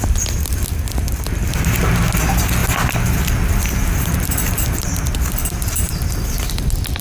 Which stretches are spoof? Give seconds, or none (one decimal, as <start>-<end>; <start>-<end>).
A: none